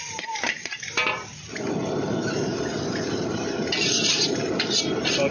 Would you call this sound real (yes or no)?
no